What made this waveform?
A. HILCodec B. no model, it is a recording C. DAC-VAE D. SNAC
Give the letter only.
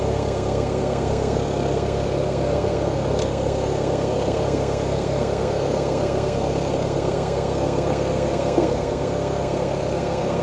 D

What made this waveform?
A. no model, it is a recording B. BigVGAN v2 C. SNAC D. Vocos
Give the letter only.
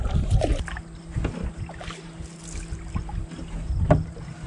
A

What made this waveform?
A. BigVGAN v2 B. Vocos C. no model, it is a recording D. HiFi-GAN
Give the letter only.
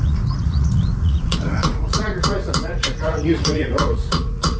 B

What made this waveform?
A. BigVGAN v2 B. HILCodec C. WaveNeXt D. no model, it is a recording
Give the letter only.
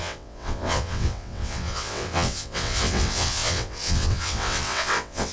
C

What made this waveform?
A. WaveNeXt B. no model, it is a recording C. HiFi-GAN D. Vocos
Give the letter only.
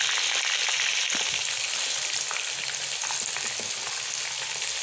B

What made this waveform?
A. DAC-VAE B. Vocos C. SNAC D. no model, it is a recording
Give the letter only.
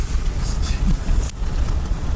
B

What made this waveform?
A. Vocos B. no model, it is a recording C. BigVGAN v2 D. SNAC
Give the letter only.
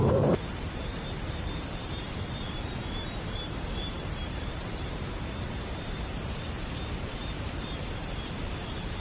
C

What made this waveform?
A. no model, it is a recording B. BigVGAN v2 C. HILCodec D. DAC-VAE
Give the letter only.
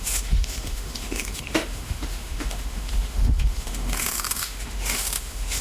D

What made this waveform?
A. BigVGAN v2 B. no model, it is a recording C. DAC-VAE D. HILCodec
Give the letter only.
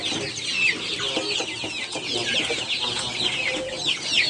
B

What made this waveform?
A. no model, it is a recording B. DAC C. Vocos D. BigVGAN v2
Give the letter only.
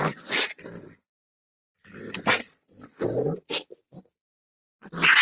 A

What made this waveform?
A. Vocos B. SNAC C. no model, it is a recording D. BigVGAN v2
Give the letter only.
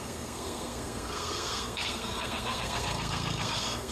B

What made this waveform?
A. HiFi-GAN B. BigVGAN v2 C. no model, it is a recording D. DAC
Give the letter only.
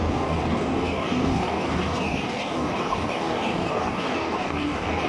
D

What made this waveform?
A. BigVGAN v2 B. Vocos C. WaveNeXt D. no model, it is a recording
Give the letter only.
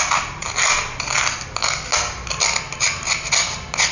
D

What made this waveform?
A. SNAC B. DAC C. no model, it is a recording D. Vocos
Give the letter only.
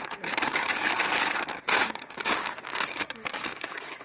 B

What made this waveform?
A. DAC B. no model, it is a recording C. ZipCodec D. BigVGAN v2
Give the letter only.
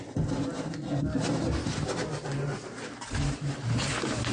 B